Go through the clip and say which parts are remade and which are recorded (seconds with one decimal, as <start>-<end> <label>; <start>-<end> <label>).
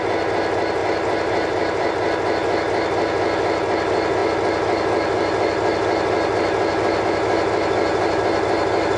0.0-0.8 recorded; 0.8-1.9 remade; 1.9-9.0 recorded